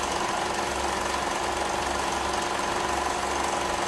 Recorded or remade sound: recorded